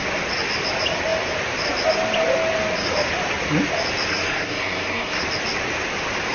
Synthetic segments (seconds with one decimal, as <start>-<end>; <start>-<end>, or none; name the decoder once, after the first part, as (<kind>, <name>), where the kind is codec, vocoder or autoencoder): 4.1-5.2 (codec, SNAC)